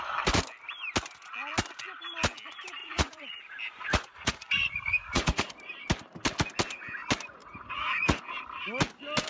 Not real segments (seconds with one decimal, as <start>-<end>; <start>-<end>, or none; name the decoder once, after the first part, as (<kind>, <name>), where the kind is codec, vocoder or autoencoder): 2.8-3.4 (vocoder, Vocos); 3.9-5.5; 7.4-8.2